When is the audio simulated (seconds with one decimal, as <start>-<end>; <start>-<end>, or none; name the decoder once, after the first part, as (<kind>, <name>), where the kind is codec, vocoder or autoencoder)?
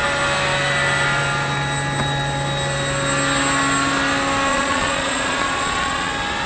4.5-6.1 (vocoder, Vocos)